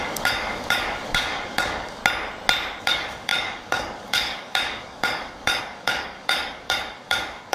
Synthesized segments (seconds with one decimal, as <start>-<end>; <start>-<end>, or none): 0.0-2.0; 2.8-7.5